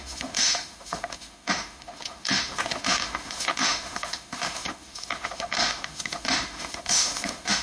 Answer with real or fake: fake